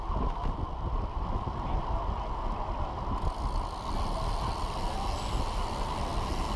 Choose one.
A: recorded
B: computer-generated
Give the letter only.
A